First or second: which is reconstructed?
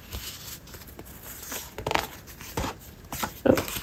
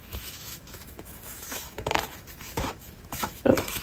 second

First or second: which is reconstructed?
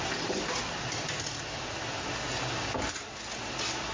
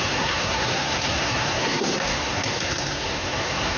second